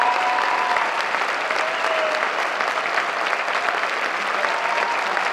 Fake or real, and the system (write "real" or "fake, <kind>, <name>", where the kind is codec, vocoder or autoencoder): real